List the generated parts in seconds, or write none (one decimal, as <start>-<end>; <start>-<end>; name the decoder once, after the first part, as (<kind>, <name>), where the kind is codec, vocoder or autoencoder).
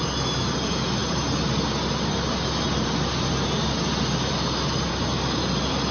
none